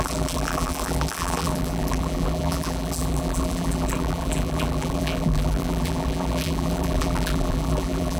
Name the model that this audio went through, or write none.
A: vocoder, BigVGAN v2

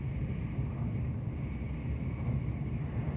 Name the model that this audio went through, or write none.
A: none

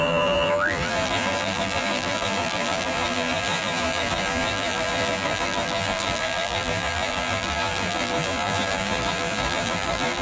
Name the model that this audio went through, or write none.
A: vocoder, BigVGAN v2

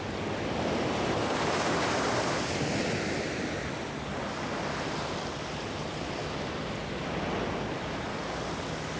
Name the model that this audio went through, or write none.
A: none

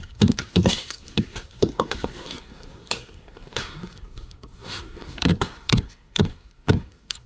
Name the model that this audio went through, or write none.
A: codec, SNAC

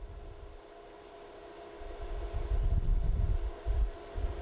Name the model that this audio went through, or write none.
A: none